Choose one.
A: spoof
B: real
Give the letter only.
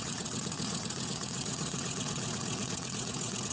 A